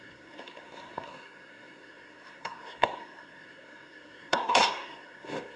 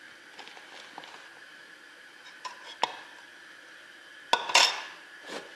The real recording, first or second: second